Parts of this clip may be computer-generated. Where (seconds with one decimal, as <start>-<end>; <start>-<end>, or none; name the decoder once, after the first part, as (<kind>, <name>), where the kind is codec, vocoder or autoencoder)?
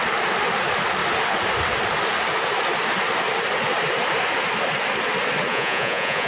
5.5-6.3 (vocoder, Vocos)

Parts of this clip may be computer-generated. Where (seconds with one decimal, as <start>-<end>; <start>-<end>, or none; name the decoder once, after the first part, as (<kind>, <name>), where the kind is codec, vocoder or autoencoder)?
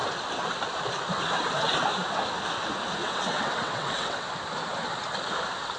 3.0-4.3 (vocoder, WaveNeXt)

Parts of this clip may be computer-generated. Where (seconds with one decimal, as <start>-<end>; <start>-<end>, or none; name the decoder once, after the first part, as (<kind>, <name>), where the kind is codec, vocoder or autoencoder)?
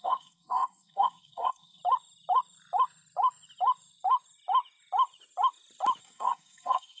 0.0-1.8 (codec, SNAC); 6.0-7.0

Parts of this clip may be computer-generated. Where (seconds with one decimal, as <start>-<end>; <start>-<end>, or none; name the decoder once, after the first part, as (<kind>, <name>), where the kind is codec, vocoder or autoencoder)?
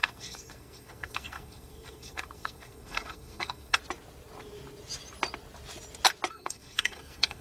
0.0-3.8 (codec, SNAC); 6.3-7.4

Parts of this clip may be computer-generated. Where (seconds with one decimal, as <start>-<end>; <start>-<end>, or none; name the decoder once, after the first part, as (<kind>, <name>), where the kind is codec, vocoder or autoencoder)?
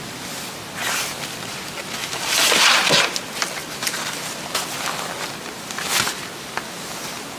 2.0-2.5 (vocoder, BigVGAN v2); 3.6-4.1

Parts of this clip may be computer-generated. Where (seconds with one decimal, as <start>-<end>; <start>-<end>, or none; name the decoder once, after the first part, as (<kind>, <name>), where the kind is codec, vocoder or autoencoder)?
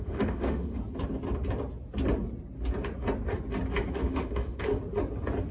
0.0-0.8 (autoencoder, DAC-VAE); 4.0-4.7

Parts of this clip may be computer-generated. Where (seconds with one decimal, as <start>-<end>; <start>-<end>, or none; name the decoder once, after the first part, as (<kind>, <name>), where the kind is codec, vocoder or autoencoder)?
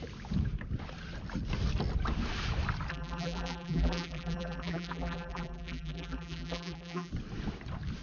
2.9-7.1 (vocoder, BigVGAN v2)